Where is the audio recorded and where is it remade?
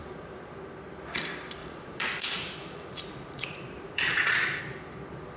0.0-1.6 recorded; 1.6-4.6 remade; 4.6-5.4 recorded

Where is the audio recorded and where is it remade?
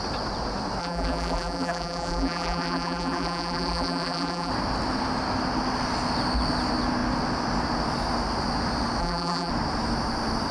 0.0-0.8 recorded; 0.8-4.5 remade; 4.5-9.0 recorded; 9.0-9.5 remade; 9.5-10.5 recorded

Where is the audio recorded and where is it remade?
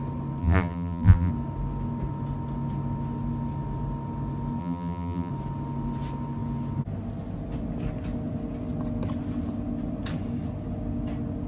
0.0-0.4 recorded; 0.4-1.3 remade; 1.3-4.6 recorded; 4.6-5.3 remade; 5.3-11.5 recorded